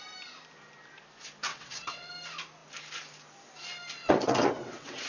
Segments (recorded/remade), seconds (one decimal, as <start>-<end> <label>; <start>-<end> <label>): 0.0-1.5 recorded; 1.5-2.1 remade; 2.1-4.0 recorded; 4.0-5.1 remade